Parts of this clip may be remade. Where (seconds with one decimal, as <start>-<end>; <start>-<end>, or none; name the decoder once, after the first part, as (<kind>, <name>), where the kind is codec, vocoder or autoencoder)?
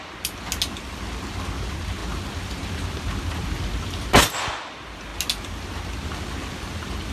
none